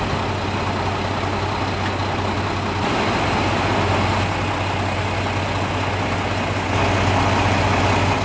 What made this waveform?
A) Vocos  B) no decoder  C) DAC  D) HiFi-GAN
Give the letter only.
B